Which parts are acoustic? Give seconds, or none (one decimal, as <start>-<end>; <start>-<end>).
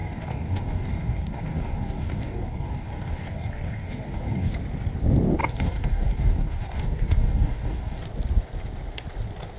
4.5-5.4; 8.0-9.6